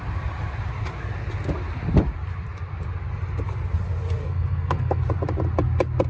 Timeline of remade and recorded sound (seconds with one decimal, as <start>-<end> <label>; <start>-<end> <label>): 0.0-4.2 recorded; 4.2-5.0 remade; 5.0-6.1 recorded